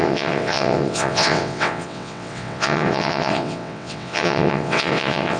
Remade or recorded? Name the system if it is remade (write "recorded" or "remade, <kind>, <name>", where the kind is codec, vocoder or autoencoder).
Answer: remade, vocoder, WaveNeXt